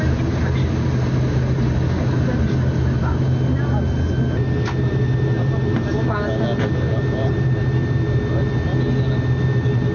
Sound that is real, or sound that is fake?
real